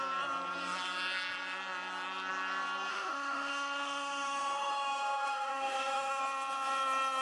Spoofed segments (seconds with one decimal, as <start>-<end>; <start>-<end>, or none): 2.9-6.2